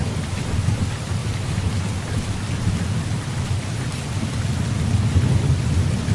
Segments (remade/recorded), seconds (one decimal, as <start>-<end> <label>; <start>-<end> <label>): 0.0-6.1 recorded